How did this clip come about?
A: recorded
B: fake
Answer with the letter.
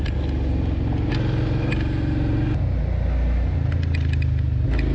A